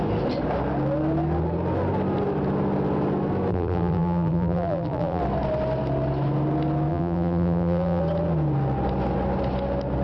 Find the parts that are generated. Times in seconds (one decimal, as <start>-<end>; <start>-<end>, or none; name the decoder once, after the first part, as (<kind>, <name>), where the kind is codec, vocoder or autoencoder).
3.5-5.2 (vocoder, BigVGAN v2); 6.9-8.0